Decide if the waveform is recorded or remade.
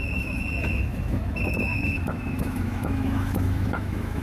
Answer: remade